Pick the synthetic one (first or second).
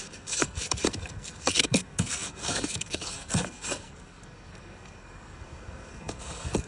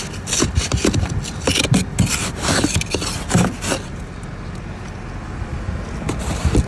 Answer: first